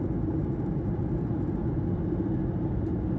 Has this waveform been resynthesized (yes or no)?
no